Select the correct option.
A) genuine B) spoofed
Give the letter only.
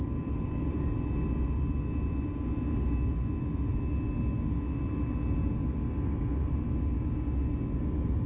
A